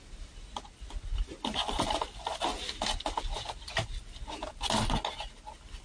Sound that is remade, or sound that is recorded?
recorded